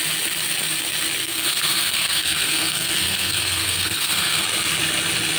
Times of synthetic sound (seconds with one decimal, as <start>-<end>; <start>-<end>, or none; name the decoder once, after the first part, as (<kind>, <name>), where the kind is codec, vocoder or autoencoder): 1.2-4.4 (codec, SNAC)